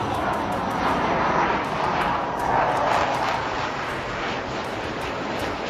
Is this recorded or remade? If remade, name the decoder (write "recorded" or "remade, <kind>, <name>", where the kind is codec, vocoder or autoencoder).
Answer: recorded